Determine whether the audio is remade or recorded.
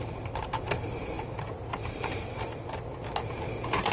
recorded